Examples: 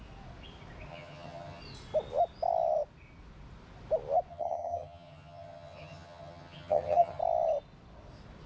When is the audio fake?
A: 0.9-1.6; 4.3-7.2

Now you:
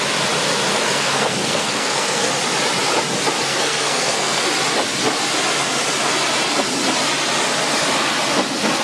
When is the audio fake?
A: 0.7-2.3; 3.5-4.5

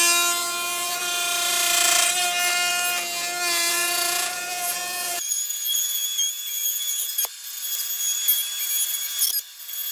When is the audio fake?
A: 0.4-1.0; 3.7-7.0

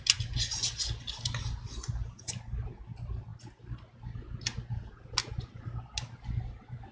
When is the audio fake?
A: none

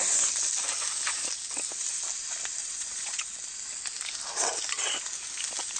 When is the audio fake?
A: 2.6-3.2